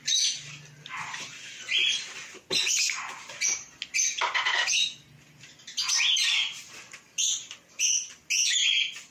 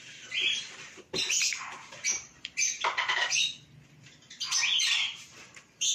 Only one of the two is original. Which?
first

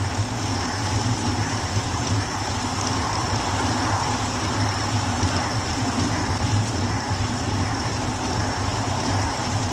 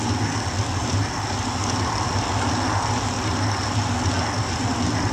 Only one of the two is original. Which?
second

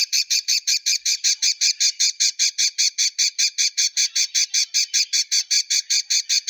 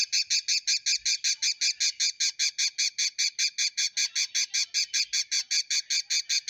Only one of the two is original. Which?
second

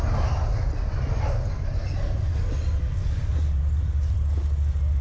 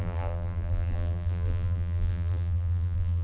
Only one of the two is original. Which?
first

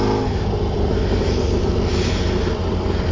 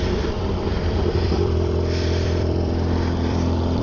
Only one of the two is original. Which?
first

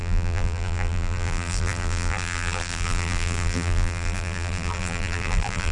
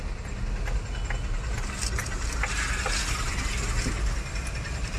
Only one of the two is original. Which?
second